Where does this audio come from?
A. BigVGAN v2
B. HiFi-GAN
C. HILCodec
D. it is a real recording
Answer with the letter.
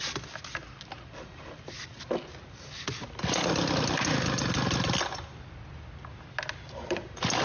D